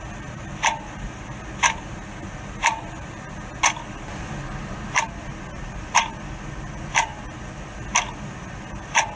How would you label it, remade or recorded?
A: recorded